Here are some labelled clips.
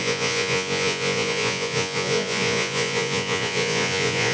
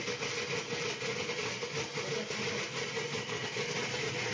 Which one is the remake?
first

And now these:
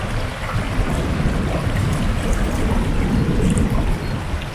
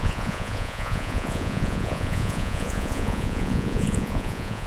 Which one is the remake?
second